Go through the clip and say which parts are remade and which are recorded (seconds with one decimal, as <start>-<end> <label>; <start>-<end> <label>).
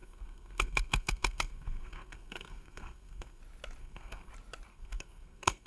0.0-3.4 remade; 3.4-3.8 recorded; 3.8-4.3 remade; 4.3-4.7 recorded; 4.7-5.7 remade